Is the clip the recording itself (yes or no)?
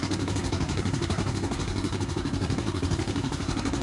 no